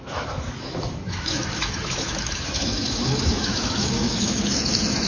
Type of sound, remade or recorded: remade